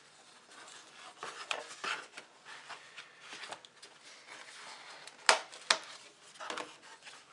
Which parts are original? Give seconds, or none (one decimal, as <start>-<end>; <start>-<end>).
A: 3.0-6.6